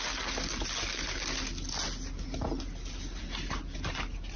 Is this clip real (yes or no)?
yes